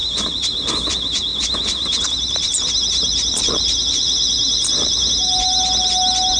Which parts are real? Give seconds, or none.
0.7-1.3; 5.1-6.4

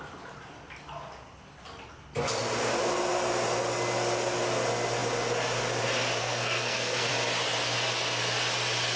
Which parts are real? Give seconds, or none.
0.0-6.2; 7.1-9.0